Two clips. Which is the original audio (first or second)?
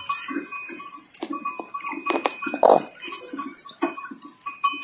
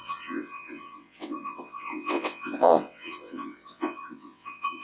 first